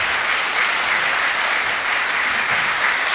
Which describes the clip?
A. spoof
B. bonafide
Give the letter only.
B